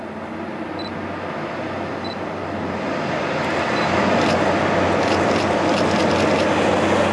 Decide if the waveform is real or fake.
real